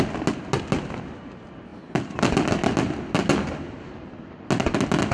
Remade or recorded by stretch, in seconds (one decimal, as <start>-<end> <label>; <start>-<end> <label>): 0.0-5.1 recorded